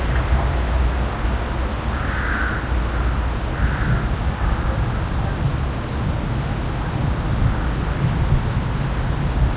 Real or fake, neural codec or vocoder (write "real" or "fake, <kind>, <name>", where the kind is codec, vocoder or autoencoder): real